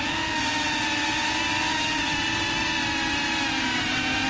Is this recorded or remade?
recorded